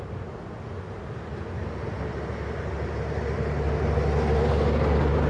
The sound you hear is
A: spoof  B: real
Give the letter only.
B